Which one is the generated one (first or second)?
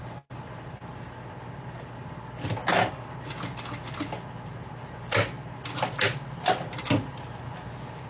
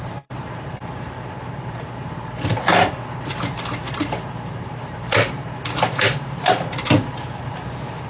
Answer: second